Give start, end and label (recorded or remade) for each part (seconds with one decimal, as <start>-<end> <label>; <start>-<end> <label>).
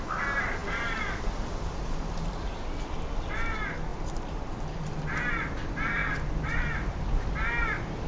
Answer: 0.0-8.1 recorded